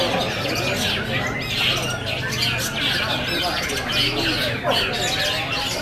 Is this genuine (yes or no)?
yes